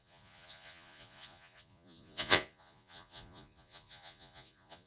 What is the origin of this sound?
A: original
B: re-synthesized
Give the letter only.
B